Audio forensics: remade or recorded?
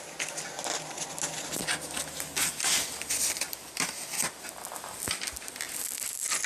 recorded